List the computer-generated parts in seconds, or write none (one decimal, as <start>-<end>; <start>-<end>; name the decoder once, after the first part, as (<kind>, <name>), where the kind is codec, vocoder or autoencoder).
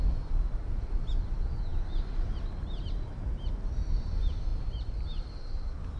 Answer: none